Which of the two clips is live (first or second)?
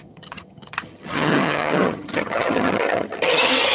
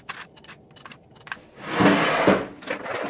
second